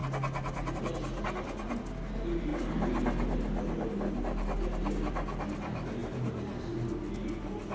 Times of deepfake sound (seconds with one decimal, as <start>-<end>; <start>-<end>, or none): none